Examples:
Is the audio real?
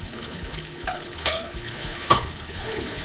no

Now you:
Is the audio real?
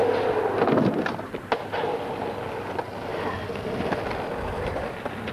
yes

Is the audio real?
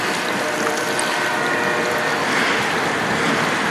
yes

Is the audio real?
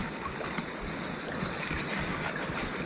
no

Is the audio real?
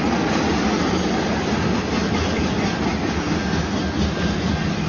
yes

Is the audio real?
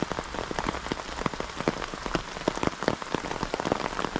yes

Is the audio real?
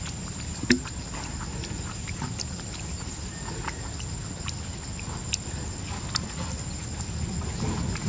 yes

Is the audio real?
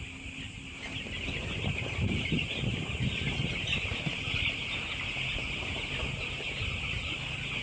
yes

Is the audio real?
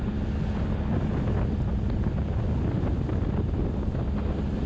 yes